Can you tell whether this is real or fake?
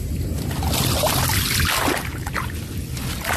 real